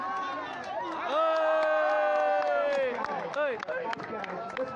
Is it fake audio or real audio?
real